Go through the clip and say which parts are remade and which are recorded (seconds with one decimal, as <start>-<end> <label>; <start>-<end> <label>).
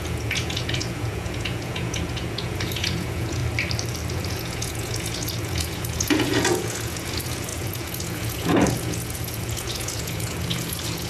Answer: 0.0-3.4 remade; 3.4-4.1 recorded; 4.1-11.1 remade